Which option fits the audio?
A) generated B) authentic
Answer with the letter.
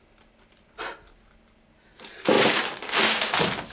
B